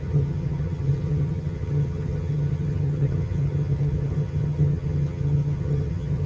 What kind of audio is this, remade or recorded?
remade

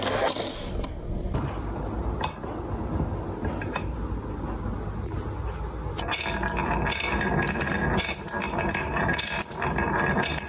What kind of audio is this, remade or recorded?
recorded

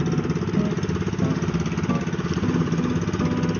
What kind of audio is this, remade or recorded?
recorded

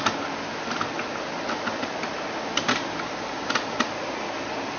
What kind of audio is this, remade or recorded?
recorded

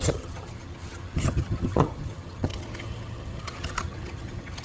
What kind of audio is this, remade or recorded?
remade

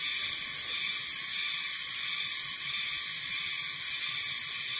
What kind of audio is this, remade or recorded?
recorded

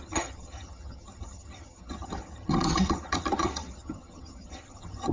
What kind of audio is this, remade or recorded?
remade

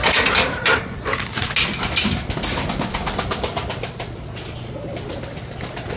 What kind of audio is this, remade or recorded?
recorded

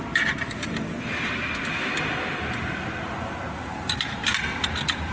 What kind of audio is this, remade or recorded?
recorded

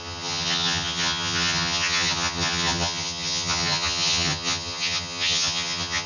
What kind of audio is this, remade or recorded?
remade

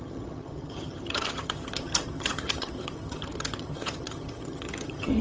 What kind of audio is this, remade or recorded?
remade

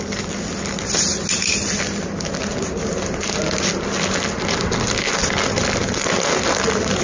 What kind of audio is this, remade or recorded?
recorded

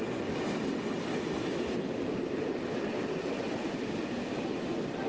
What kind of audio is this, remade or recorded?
recorded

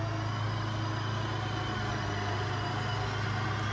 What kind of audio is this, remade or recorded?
recorded